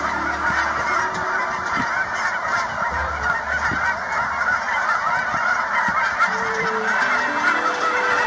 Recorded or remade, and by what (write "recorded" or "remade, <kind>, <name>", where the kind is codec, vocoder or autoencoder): remade, vocoder, BigVGAN v2